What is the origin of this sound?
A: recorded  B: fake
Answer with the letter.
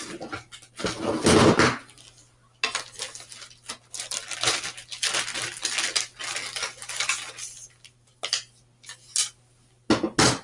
A